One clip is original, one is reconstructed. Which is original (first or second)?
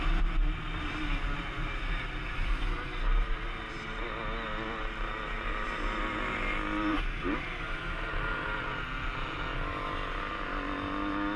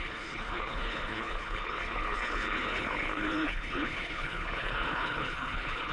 first